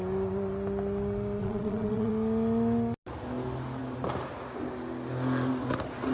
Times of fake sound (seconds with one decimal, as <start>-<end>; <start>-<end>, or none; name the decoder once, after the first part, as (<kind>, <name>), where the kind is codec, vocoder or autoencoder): 1.4-2.1 (vocoder, Vocos)